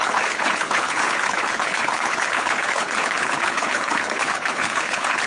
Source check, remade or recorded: remade